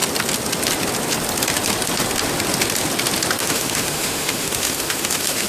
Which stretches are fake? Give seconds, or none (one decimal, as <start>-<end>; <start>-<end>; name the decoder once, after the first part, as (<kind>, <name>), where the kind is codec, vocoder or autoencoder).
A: 3.4-5.5 (autoencoder, DAC-VAE)